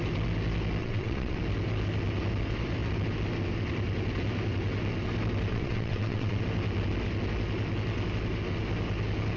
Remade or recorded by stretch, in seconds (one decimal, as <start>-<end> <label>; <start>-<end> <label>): 0.0-0.8 recorded; 0.8-1.4 remade; 1.4-5.5 recorded; 5.5-6.4 remade; 6.4-9.4 recorded